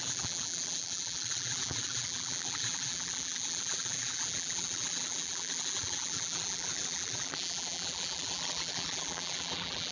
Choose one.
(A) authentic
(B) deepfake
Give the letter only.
B